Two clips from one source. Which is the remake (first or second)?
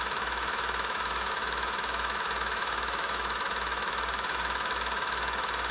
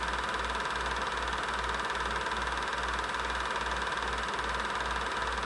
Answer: first